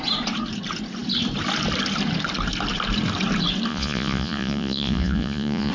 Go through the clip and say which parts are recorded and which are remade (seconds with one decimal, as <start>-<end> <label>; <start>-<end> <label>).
0.0-3.7 recorded; 3.7-5.7 remade